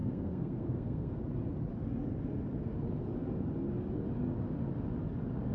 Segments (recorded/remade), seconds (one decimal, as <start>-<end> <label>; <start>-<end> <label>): 0.0-1.2 remade; 1.2-5.5 recorded